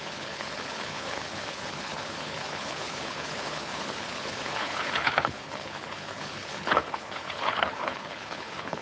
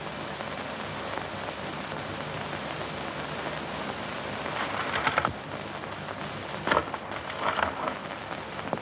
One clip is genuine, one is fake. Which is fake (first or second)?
first